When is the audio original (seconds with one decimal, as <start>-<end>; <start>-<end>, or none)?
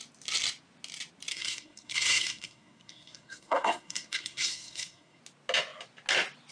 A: 0.0-1.3; 5.2-6.5